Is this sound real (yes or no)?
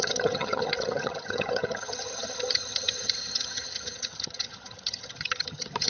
no